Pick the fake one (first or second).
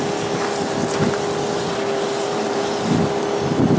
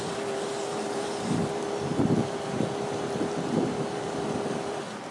second